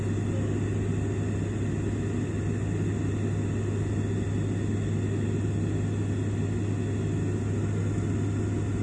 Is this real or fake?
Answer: real